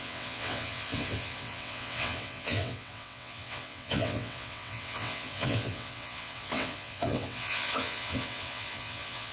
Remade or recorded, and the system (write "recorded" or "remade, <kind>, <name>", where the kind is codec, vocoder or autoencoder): remade, vocoder, WaveNeXt